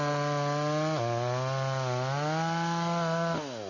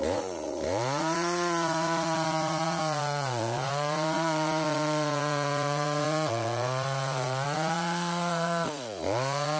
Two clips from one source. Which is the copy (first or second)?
second